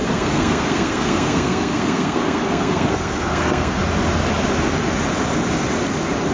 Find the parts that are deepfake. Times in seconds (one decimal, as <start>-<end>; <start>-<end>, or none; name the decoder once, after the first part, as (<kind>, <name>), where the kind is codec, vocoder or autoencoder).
0.0-3.8 (codec, SNAC)